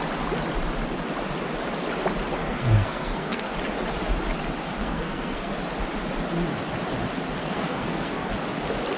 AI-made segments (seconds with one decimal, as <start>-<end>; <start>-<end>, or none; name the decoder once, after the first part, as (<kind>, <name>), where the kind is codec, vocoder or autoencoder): 2.4-3.5 (codec, SNAC); 4.8-5.5; 7.4-8.3